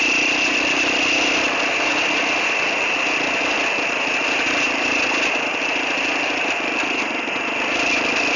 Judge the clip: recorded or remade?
recorded